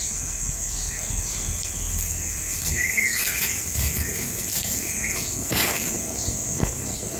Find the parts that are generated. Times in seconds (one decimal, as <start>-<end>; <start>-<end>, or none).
0.0-7.2